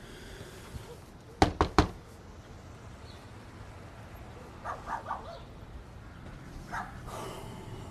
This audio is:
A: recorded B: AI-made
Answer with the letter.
A